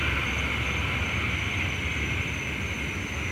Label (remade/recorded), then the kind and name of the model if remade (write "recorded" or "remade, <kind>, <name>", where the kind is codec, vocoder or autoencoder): recorded